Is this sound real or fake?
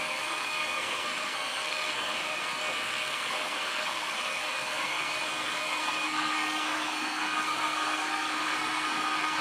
fake